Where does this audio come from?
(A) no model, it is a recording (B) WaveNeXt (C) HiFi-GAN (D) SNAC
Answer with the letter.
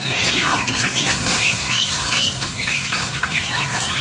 D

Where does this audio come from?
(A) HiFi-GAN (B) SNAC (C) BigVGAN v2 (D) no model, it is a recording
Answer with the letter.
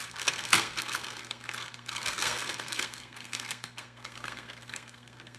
B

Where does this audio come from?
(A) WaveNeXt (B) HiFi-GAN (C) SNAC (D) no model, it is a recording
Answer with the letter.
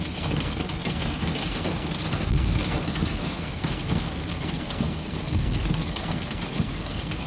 C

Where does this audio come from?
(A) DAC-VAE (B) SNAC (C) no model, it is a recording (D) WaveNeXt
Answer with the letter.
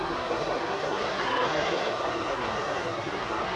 B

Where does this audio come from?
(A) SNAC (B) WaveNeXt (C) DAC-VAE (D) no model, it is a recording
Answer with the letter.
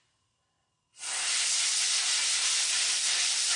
D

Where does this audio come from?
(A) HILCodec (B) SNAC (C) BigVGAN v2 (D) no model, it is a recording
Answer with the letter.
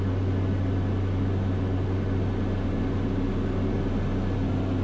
D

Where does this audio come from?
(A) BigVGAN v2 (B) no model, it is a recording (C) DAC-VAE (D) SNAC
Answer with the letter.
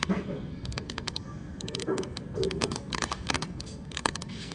D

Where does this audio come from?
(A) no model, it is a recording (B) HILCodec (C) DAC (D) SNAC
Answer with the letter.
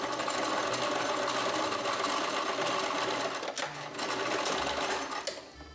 A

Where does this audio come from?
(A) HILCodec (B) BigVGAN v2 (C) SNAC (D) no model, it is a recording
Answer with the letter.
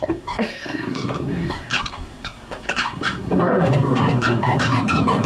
C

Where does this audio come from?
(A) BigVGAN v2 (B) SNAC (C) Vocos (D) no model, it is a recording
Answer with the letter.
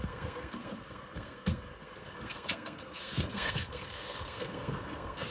B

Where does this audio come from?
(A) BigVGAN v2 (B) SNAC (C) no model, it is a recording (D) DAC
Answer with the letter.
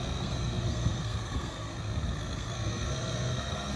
B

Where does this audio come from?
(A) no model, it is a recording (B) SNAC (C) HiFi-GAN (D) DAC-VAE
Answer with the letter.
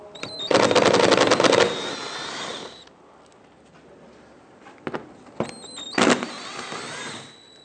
A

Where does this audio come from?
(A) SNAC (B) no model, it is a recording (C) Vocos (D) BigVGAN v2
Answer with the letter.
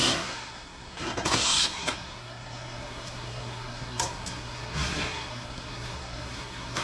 A